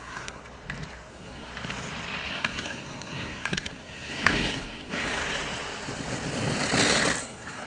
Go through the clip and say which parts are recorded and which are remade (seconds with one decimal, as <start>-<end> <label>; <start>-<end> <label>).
0.0-0.4 remade; 0.4-1.1 recorded; 1.1-1.5 remade; 1.5-2.3 recorded; 2.3-5.2 remade; 5.2-7.2 recorded; 7.2-7.7 remade